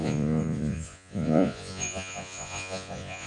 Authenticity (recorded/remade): remade